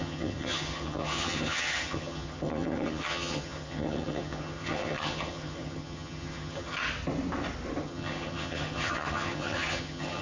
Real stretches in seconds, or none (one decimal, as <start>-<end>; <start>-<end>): 6.8-7.8